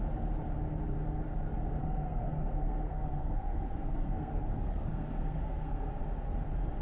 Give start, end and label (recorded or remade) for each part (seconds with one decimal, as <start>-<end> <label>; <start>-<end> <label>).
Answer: 0.0-1.8 recorded; 1.8-5.9 remade; 5.9-6.8 recorded